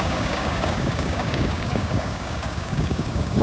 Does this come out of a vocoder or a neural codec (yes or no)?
yes